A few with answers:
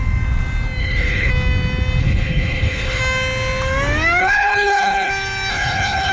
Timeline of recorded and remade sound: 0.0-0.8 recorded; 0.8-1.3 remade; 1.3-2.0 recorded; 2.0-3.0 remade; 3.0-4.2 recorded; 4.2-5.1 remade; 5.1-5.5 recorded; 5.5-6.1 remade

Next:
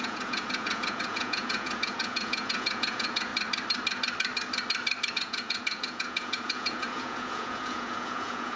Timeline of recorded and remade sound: 0.0-3.3 remade; 3.3-5.1 recorded; 5.1-8.6 remade

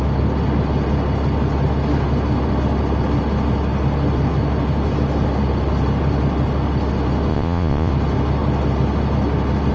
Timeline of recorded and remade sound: 0.0-7.3 recorded; 7.3-7.9 remade; 7.9-9.7 recorded

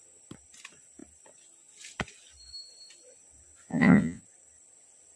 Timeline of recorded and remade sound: 0.0-3.7 recorded; 3.7-4.2 remade; 4.2-5.2 recorded

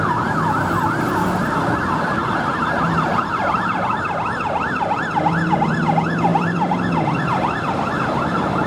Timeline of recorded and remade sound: 0.0-2.2 recorded; 2.2-5.0 remade; 5.0-6.3 recorded; 6.3-8.7 remade

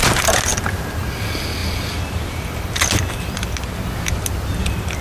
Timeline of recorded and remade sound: 0.0-5.0 recorded